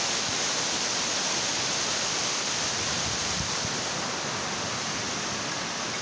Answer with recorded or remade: recorded